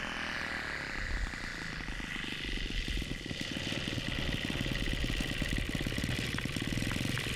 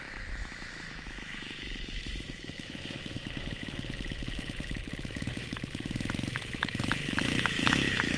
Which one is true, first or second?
first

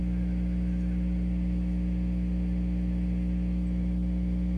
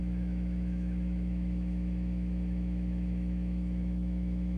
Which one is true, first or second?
first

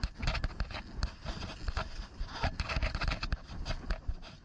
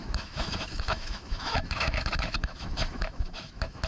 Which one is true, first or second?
first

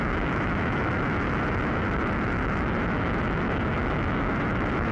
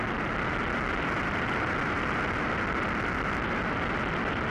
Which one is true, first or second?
second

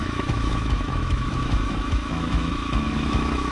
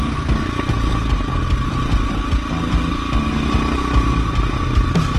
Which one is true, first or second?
second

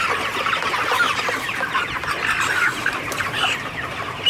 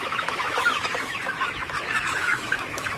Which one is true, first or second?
first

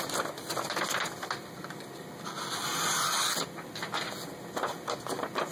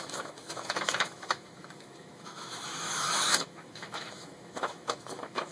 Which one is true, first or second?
first